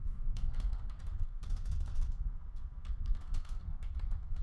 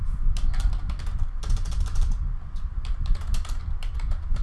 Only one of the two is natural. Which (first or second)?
second